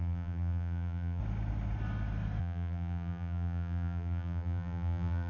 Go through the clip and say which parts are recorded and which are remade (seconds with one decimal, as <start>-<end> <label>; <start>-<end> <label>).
0.0-1.2 remade; 1.2-2.4 recorded; 2.4-5.3 remade